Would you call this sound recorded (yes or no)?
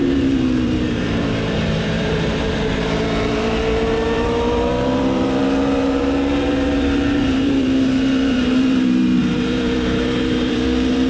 no